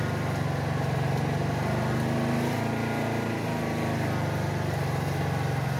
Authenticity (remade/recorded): recorded